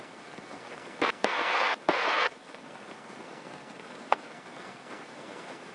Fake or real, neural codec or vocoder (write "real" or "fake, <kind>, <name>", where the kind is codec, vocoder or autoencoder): fake, codec, SNAC